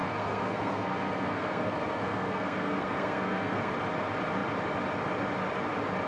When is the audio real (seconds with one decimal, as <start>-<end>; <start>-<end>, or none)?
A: 3.7-6.1